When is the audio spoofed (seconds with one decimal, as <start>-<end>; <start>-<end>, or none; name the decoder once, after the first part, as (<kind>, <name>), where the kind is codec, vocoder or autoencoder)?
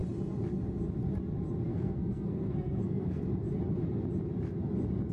1.7-3.2 (codec, SNAC)